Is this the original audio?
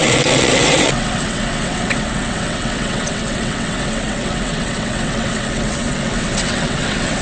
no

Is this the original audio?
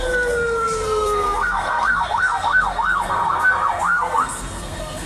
no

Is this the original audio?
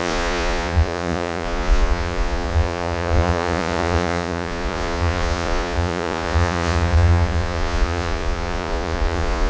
no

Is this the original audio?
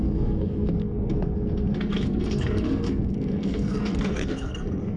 no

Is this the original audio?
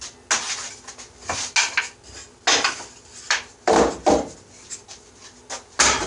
yes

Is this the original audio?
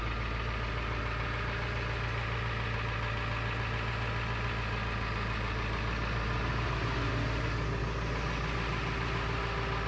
yes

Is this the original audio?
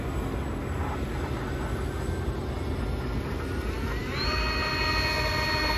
yes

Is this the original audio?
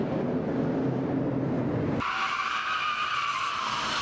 yes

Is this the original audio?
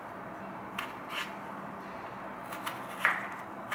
yes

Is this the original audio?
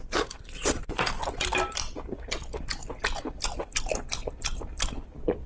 yes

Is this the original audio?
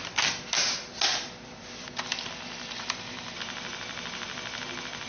yes